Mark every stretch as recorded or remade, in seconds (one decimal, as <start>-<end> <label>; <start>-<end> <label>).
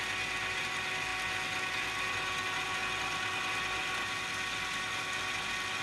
0.0-5.8 recorded